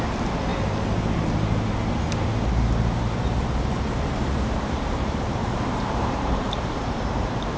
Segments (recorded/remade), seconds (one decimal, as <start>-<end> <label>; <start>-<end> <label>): 0.0-3.7 recorded; 3.7-7.6 remade